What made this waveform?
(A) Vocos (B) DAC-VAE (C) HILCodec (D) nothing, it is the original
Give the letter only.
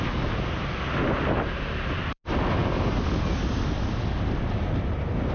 D